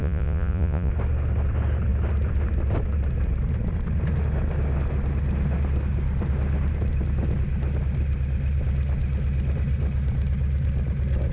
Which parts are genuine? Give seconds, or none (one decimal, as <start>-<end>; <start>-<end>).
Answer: 0.9-11.3